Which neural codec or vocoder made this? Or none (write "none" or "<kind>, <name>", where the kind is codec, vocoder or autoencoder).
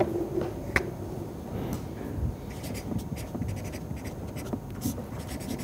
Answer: none